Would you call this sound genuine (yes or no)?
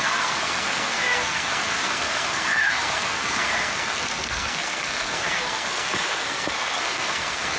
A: no